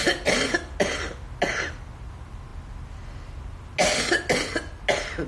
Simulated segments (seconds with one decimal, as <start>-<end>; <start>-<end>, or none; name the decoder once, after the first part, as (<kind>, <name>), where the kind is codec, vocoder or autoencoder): none